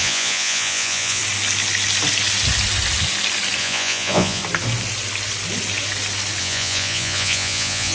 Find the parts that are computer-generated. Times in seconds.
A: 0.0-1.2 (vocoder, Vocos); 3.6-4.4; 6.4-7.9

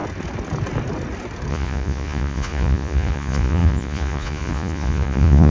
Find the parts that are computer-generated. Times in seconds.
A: 1.5-5.5 (vocoder, Vocos)

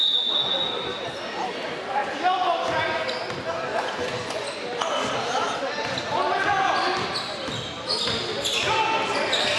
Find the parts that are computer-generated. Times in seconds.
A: 3.7-4.6 (vocoder, Vocos)

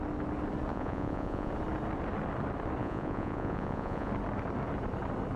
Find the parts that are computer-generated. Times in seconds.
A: 0.7-1.5 (vocoder, Vocos); 2.8-4.1

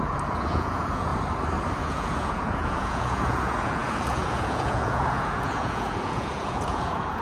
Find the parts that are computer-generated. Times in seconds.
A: 0.0-1.1 (vocoder, Vocos); 1.8-7.2

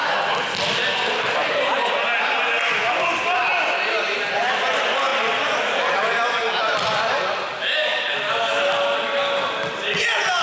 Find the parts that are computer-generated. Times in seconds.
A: none